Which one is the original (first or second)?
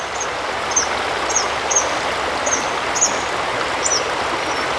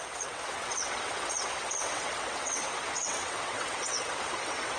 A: first